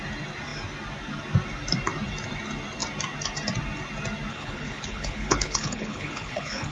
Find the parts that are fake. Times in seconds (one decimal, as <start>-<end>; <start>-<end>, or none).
4.3-6.7